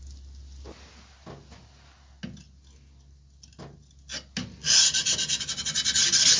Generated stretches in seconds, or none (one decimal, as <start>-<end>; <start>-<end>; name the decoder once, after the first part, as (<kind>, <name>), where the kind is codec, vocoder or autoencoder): none